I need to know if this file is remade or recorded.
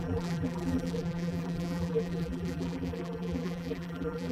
remade